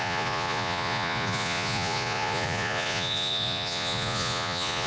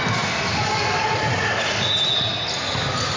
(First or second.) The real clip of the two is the second